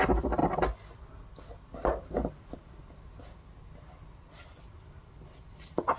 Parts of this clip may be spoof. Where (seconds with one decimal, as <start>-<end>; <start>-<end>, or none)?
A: none